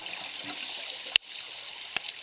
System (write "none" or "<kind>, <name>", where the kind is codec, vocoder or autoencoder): none